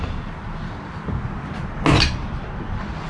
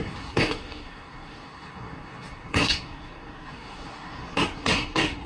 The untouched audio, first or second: first